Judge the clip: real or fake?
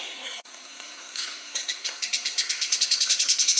fake